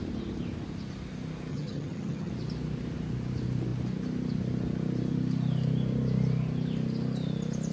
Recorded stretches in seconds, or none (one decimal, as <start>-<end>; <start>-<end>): 0.0-1.5; 2.3-7.7